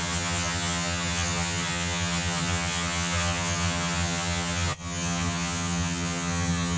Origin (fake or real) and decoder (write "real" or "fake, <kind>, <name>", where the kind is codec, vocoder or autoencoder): fake, vocoder, HiFi-GAN